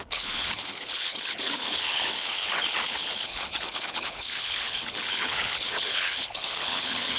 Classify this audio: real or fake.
fake